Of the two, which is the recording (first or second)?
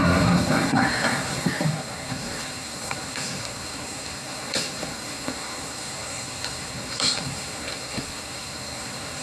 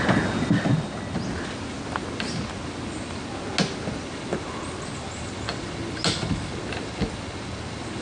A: second